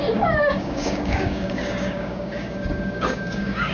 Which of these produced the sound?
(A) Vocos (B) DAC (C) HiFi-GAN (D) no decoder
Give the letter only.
B